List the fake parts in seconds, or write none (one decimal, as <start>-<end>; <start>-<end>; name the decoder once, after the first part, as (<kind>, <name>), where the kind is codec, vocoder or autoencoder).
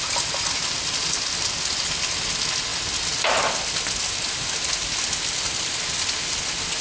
none